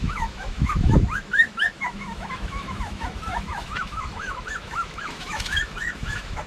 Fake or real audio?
fake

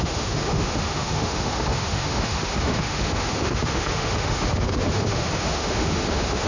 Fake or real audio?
fake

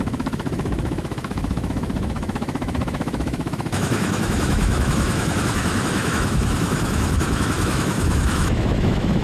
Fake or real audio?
fake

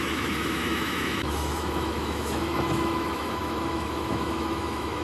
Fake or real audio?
fake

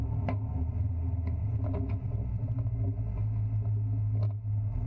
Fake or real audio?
real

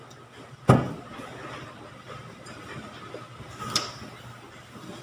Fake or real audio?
real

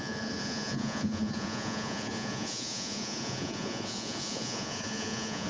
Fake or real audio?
fake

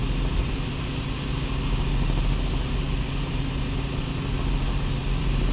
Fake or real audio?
real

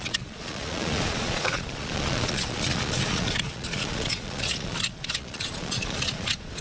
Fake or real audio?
fake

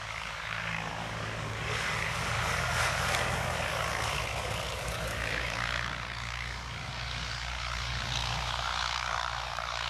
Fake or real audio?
fake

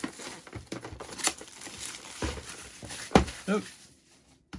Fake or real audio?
fake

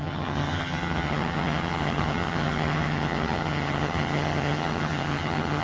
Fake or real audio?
fake